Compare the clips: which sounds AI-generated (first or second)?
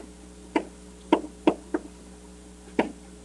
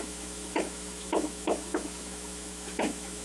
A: second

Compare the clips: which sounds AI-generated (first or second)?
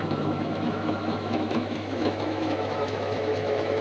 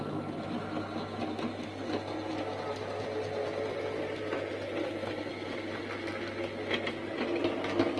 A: first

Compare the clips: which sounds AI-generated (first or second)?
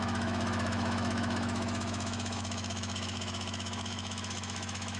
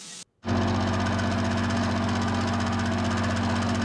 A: first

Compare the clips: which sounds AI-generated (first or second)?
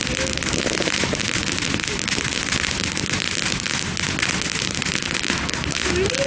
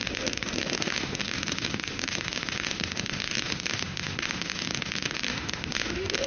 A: second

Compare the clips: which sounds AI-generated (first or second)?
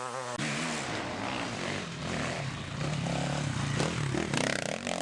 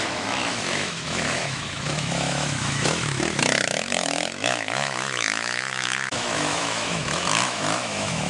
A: second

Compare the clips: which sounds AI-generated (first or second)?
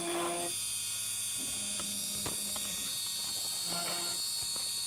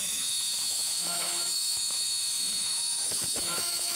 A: second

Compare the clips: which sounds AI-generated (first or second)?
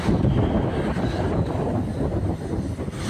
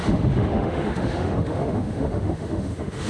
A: second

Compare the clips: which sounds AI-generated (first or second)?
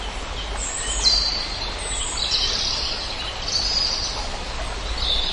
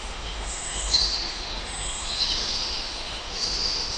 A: second